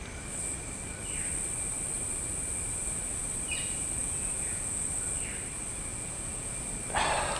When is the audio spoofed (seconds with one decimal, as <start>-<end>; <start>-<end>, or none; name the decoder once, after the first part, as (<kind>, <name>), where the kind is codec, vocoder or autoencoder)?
4.0-4.8 (vocoder, Vocos); 5.9-6.5